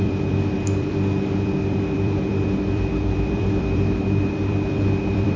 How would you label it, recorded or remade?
remade